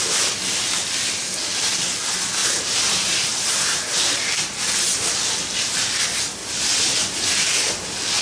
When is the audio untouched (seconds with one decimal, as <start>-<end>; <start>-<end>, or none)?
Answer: 0.0-2.4; 4.5-6.4; 7.6-8.2